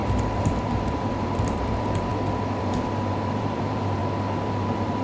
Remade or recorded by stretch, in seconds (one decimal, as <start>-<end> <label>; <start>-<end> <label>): 0.0-2.1 remade; 2.1-2.6 recorded; 2.6-4.0 remade; 4.0-4.5 recorded; 4.5-5.0 remade